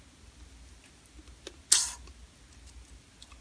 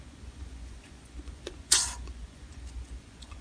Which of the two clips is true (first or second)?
first